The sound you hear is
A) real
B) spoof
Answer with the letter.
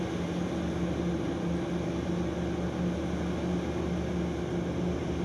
A